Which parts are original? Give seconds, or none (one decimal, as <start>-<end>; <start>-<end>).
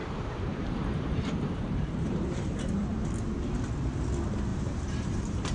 3.3-4.5